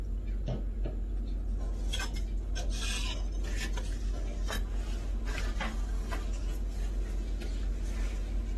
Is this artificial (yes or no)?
no